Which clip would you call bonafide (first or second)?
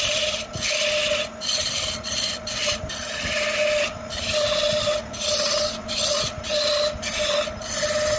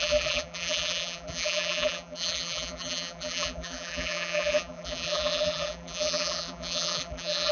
first